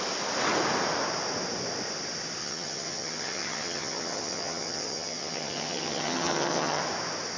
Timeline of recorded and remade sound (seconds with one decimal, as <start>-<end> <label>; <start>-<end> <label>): 0.0-2.4 recorded; 2.4-6.8 remade; 6.8-7.4 recorded